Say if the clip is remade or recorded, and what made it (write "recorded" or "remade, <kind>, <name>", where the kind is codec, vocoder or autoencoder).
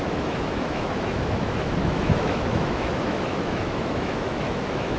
remade, autoencoder, DAC-VAE